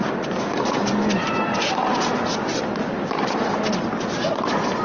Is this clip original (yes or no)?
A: yes